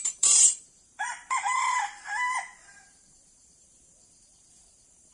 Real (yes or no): no